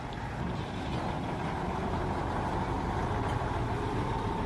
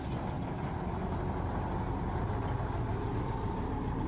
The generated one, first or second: first